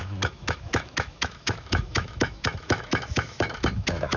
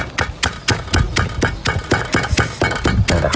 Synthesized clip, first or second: first